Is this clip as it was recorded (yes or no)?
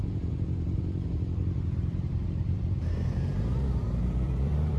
no